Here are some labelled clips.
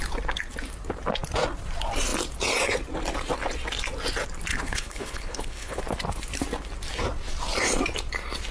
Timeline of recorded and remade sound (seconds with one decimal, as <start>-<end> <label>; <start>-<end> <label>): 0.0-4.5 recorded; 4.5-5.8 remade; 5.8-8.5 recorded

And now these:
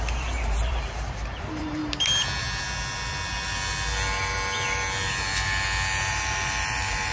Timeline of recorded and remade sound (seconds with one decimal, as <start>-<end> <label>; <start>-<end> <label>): 0.0-1.8 remade; 1.8-6.1 recorded; 6.1-7.1 remade

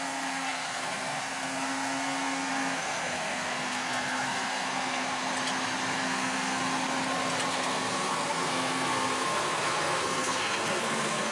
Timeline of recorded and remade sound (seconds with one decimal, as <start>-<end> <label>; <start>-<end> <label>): 0.0-5.2 remade; 5.2-6.0 recorded; 6.0-6.6 remade; 6.6-7.5 recorded; 7.5-11.3 remade